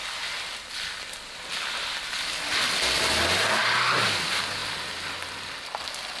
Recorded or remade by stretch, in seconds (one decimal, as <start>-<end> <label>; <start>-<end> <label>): 0.0-6.2 recorded